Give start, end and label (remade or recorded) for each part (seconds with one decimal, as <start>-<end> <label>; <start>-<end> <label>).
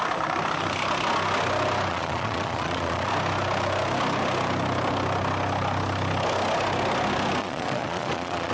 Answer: 0.0-1.9 recorded; 1.9-3.1 remade; 3.1-7.4 recorded; 7.4-8.5 remade